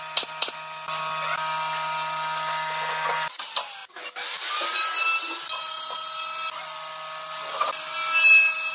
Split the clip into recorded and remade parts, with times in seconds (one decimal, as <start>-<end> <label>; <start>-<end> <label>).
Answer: 0.0-8.7 recorded